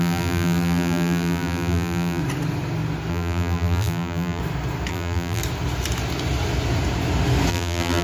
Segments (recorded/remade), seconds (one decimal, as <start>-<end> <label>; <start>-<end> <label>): 0.0-2.2 remade; 2.2-3.1 recorded; 3.1-4.4 remade; 4.4-4.9 recorded; 4.9-5.4 remade; 5.4-7.5 recorded; 7.5-8.0 remade